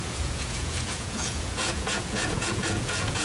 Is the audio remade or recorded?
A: remade